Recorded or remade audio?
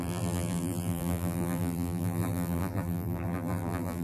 remade